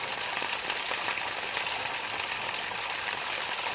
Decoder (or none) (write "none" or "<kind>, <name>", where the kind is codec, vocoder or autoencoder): none